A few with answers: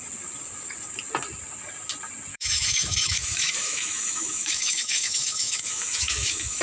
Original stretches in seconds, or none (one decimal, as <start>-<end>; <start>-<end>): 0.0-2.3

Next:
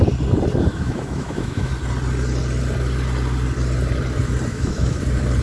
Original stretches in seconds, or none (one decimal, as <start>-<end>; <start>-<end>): 0.0-0.7; 1.7-4.5; 5.0-5.4

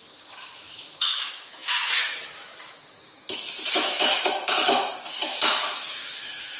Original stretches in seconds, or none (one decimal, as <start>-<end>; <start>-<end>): none

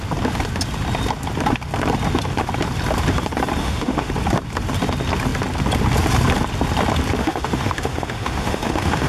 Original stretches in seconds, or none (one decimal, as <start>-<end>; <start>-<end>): 0.0-3.6; 4.1-7.2